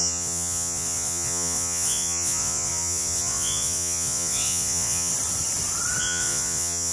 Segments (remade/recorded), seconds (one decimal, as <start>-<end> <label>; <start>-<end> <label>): 0.0-5.1 remade; 5.1-6.0 recorded; 6.0-6.9 remade